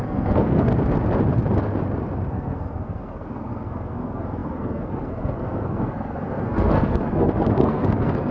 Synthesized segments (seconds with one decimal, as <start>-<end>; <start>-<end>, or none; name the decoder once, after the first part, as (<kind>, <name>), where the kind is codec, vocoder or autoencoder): 0.0-0.7 (codec, SNAC); 2.3-8.3